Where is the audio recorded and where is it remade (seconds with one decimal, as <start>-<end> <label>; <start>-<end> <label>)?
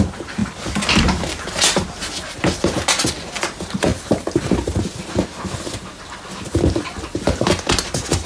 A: 0.0-0.4 recorded; 0.4-1.0 remade; 1.0-3.9 recorded; 3.9-4.4 remade; 4.4-8.3 recorded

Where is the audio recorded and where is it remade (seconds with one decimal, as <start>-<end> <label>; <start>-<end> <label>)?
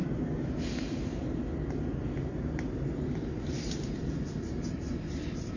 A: 0.0-5.6 recorded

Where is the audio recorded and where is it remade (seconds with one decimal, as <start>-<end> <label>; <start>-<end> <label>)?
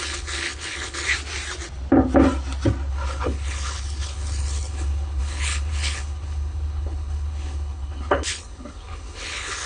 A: 0.0-1.1 remade; 1.1-2.9 recorded; 2.9-9.7 remade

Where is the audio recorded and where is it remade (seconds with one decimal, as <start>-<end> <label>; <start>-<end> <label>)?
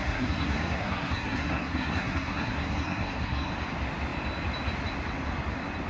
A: 0.0-3.5 remade; 3.5-5.9 recorded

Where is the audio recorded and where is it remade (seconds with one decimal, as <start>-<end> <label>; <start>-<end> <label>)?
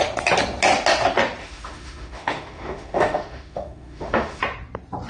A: 0.0-1.4 recorded; 1.4-4.4 remade; 4.4-5.1 recorded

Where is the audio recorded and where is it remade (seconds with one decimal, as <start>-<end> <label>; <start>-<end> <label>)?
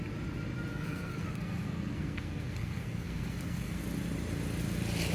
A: 0.0-0.7 recorded; 0.7-3.8 remade; 3.8-5.1 recorded